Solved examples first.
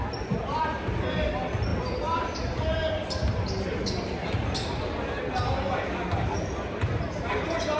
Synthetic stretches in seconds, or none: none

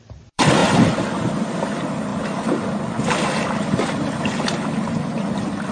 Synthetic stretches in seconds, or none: 0.0-5.7 (vocoder, BigVGAN v2)

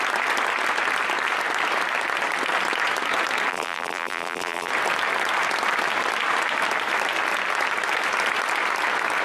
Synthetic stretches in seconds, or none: 3.5-4.7 (vocoder, BigVGAN v2)

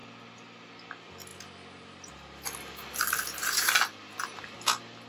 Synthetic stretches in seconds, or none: none

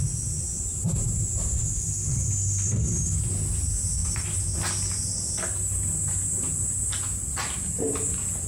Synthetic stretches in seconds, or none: 0.7-3.4 (vocoder, BigVGAN v2)